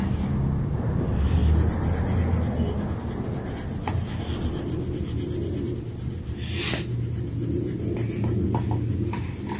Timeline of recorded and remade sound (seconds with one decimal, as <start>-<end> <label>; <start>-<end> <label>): 0.0-9.6 recorded